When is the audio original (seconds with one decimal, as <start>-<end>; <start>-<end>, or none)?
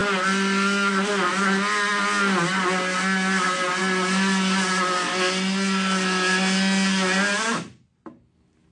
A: 0.0-8.7